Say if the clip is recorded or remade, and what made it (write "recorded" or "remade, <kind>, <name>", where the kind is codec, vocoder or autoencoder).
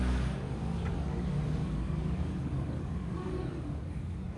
remade, codec, DAC